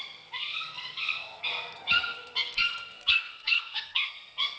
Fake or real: fake